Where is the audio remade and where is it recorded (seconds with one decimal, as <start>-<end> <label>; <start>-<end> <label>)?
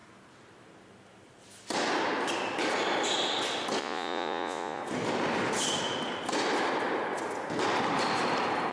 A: 0.0-3.8 recorded; 3.8-4.8 remade; 4.8-8.7 recorded